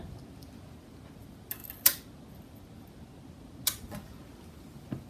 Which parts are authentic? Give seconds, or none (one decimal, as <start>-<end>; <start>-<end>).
0.0-5.1